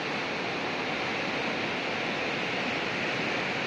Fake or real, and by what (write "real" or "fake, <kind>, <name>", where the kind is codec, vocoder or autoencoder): real